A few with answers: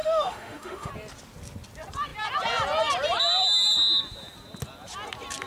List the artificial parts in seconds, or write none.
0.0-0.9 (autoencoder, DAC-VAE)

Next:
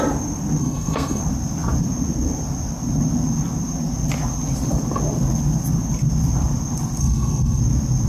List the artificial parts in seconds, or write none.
0.6-1.2 (codec, SNAC); 7.0-7.6

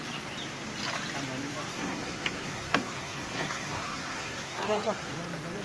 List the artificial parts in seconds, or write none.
1.7-5.1 (codec, SNAC)

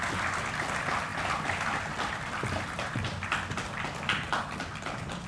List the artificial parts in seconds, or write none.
none

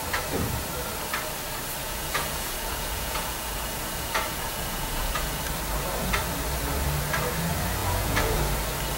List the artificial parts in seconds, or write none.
1.8-5.4 (vocoder, Vocos); 7.8-8.4